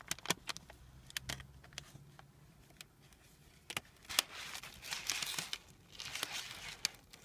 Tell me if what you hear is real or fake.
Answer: real